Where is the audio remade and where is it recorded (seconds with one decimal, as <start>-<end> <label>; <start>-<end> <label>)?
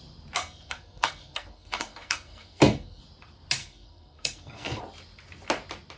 0.0-0.4 recorded; 0.4-3.0 remade; 3.0-3.6 recorded; 3.6-4.8 remade; 4.8-6.0 recorded